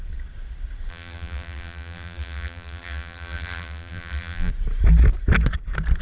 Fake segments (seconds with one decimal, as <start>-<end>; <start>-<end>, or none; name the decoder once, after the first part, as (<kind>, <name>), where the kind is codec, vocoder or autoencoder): 0.9-4.5 (vocoder, BigVGAN v2)